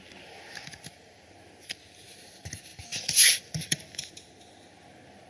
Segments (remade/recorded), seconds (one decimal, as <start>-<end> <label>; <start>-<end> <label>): 0.0-5.3 recorded